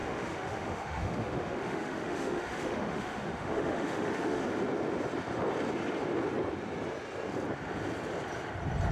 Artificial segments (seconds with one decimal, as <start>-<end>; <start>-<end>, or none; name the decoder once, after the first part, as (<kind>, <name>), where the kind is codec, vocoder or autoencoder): 0.0-4.4 (autoencoder, DAC-VAE)